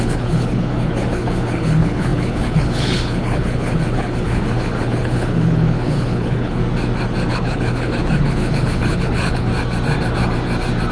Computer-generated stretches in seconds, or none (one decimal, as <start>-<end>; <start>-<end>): 0.0-6.6; 7.3-9.5